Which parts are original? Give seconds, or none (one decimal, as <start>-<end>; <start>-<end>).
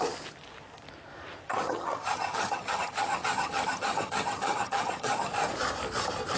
0.0-1.5; 5.3-6.4